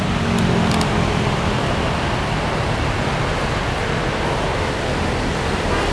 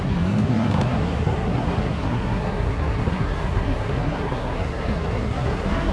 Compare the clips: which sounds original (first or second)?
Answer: first